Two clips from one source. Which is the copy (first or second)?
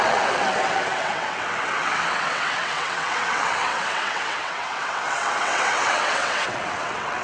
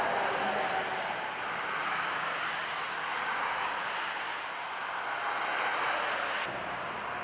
first